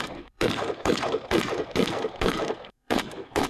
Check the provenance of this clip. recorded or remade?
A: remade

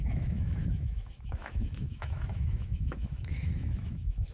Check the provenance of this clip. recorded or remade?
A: remade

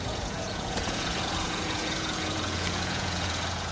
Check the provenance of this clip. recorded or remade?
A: remade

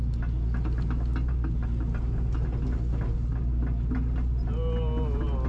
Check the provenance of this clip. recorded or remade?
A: recorded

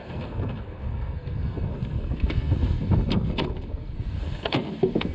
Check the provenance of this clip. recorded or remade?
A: remade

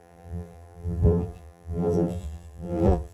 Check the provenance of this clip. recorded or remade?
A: remade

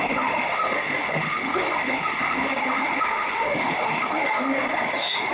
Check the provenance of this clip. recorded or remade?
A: remade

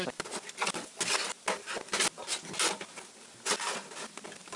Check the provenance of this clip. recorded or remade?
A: recorded